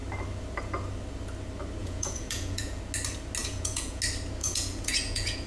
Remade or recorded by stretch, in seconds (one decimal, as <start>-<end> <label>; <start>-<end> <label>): 0.0-1.8 recorded; 1.8-2.8 remade; 2.8-3.4 recorded; 3.4-4.0 remade; 4.0-4.4 recorded; 4.4-5.5 remade